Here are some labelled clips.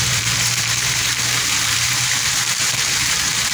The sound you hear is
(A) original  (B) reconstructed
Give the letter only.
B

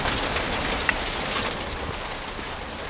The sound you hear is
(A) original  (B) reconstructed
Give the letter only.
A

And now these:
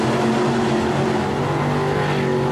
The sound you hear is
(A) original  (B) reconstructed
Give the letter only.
A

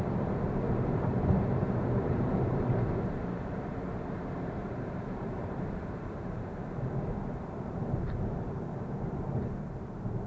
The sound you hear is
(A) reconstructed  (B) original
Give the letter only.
A